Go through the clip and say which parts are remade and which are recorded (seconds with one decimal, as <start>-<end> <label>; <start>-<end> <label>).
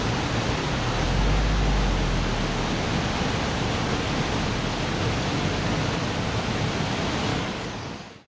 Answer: 0.0-7.3 recorded; 7.3-8.3 remade